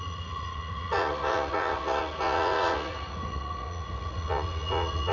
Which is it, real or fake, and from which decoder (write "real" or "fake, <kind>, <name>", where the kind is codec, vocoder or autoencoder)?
fake, vocoder, Vocos